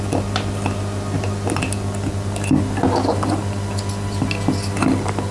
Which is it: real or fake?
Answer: real